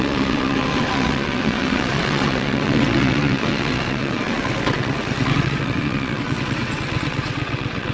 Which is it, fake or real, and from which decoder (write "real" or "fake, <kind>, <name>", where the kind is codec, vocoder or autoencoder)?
fake, vocoder, WaveNeXt